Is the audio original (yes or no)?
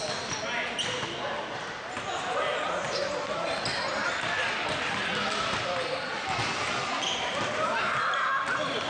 yes